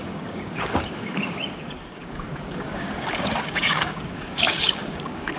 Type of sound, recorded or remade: remade